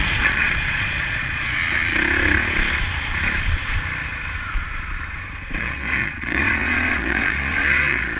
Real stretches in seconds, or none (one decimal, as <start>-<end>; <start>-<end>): 1.6-5.6